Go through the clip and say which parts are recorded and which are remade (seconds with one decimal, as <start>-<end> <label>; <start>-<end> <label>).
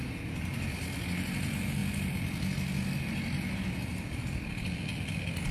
0.0-5.5 recorded